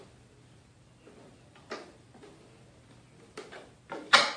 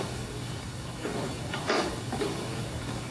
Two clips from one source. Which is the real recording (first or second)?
first